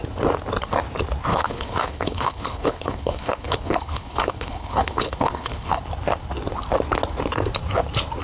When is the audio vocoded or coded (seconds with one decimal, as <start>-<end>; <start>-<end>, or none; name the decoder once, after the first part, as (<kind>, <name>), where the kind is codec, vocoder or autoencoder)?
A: 1.3-5.8 (codec, HILCodec)